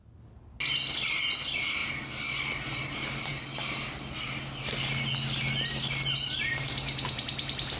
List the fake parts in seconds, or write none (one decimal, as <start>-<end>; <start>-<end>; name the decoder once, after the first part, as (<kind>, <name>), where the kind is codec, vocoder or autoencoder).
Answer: none